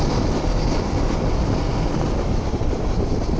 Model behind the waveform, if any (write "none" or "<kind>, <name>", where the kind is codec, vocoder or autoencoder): none